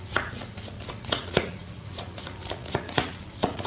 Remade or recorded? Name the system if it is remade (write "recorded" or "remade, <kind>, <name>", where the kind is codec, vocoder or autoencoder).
remade, vocoder, Vocos